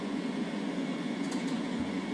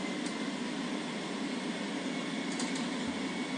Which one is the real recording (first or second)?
second